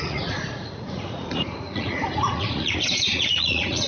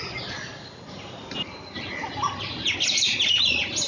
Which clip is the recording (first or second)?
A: second